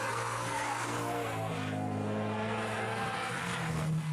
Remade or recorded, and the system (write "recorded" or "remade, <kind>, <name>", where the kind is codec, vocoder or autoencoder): remade, codec, SNAC